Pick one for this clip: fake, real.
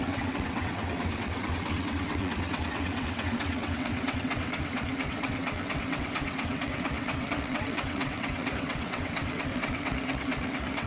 fake